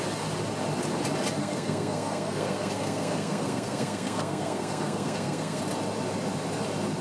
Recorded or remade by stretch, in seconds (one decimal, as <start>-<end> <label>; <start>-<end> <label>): 0.0-1.4 recorded; 1.4-5.6 remade; 5.6-7.0 recorded